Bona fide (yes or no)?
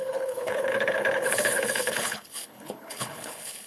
no